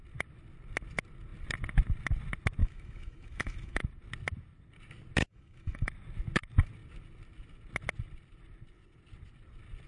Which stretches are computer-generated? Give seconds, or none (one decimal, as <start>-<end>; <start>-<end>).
2.6-3.8; 5.2-5.9